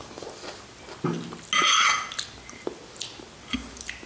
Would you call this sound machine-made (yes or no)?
no